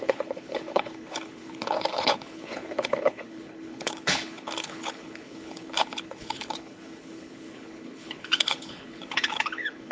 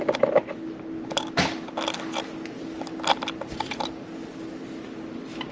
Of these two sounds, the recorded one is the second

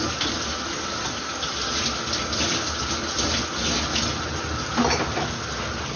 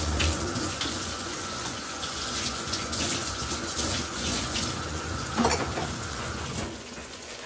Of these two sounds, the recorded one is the first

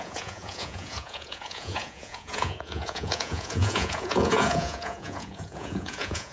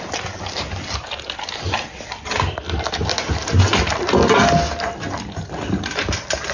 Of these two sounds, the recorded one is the second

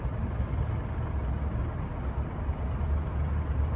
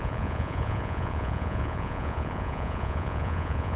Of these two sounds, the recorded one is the first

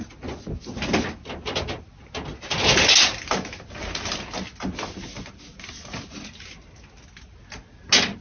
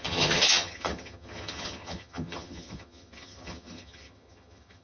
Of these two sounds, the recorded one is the first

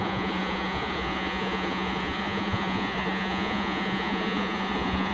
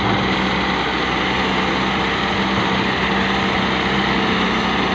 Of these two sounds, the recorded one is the second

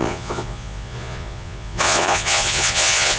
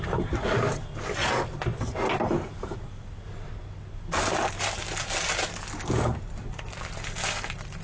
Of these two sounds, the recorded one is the second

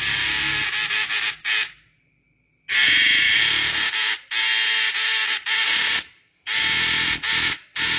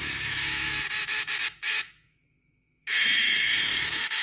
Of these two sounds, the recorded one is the first